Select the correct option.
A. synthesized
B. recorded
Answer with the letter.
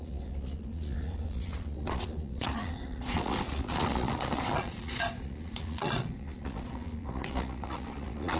A